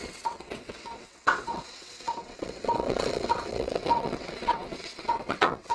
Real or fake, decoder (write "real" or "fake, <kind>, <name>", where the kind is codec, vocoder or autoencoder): fake, vocoder, WaveNeXt